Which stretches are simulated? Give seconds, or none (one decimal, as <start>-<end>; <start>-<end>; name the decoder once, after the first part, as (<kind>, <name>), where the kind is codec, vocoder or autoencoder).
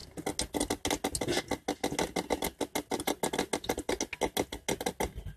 none